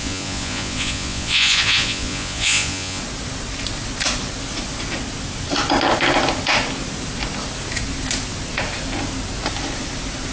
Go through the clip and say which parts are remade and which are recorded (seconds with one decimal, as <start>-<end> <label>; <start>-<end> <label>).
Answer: 0.0-3.0 remade; 3.0-10.3 recorded